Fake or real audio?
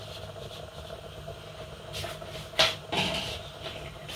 real